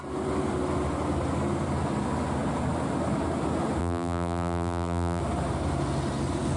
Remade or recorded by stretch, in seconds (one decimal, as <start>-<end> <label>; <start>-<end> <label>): 0.0-3.8 recorded; 3.8-5.2 remade; 5.2-6.6 recorded